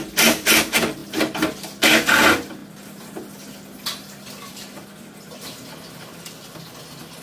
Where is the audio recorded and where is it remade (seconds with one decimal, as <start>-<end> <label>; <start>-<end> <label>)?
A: 0.0-7.2 recorded